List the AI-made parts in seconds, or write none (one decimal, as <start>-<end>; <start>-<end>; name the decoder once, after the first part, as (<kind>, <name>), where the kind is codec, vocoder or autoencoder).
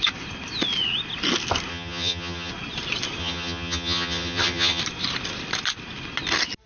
1.7-2.5 (vocoder, HiFi-GAN); 3.2-4.8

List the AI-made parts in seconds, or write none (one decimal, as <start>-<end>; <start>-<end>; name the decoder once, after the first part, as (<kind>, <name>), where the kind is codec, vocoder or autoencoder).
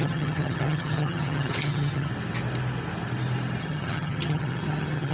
0.0-2.1 (vocoder, HiFi-GAN); 3.6-5.1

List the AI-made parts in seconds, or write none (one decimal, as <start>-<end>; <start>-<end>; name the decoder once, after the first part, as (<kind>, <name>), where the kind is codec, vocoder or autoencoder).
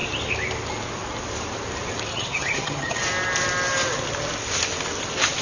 2.1-3.0 (vocoder, HiFi-GAN)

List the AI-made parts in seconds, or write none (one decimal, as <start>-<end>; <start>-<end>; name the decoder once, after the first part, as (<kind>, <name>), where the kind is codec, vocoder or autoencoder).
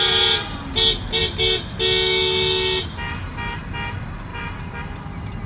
none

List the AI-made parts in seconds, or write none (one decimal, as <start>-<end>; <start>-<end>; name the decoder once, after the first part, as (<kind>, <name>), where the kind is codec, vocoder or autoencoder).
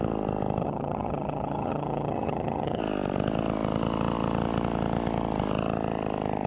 0.6-2.8 (vocoder, HiFi-GAN)